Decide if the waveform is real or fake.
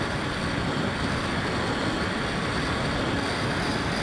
real